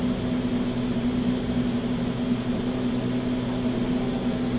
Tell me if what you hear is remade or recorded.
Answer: recorded